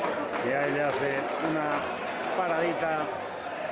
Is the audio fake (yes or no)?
no